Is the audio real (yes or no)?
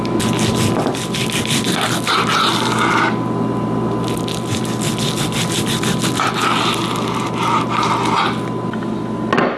yes